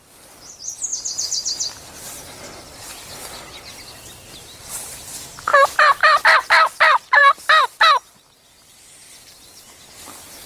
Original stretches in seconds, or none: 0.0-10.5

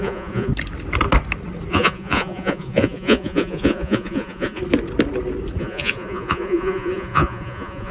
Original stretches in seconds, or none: 0.5-1.7; 4.6-5.6

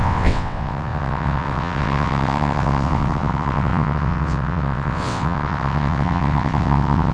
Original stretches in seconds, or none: none

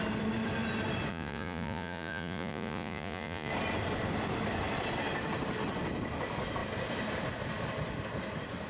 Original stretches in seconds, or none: 0.0-1.1; 3.5-8.7